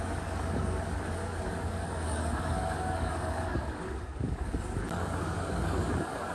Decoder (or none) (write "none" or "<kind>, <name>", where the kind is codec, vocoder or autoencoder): codec, DAC